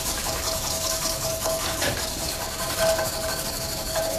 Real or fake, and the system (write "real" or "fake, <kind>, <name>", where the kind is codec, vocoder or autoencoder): fake, codec, DAC